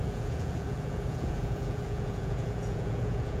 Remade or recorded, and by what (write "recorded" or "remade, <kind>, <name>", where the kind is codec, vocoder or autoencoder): remade, vocoder, Vocos